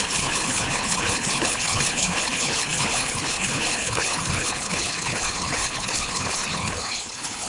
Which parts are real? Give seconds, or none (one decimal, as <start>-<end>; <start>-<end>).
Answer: none